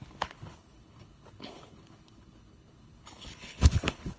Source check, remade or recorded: remade